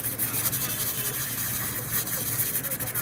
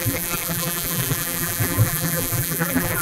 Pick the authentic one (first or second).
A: first